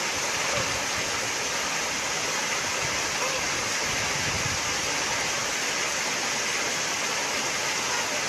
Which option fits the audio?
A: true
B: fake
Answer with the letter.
A